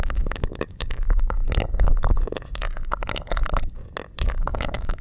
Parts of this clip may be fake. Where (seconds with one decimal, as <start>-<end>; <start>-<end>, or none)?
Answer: 0.0-1.4; 4.4-5.0